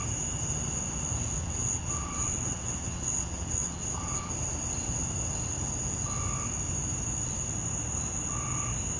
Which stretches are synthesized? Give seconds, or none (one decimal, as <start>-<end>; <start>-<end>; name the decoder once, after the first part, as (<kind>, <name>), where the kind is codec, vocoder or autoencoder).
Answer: 1.4-4.3 (vocoder, WaveNeXt)